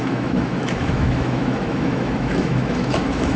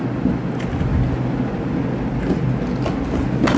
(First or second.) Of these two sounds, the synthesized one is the first